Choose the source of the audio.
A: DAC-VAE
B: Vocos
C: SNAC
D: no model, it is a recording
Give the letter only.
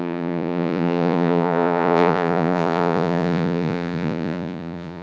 B